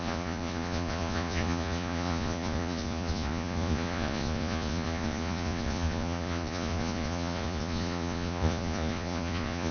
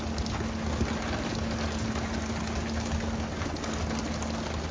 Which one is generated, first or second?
first